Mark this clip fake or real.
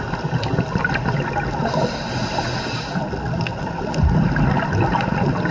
real